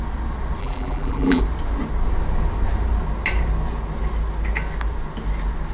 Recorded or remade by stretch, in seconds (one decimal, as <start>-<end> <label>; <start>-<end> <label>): 0.0-0.6 recorded; 0.6-1.4 remade; 1.4-5.7 recorded